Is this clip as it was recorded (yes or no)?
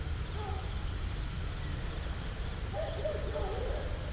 yes